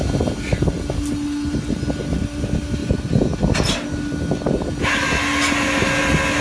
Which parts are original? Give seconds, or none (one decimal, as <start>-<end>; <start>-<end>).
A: 0.0-6.4